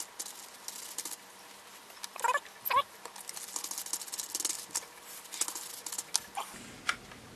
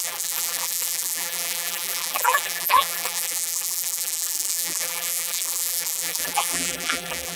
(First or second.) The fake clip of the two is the second